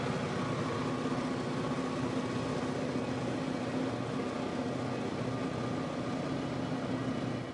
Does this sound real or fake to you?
real